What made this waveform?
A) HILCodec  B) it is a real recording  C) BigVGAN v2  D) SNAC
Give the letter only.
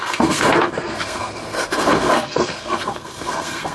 D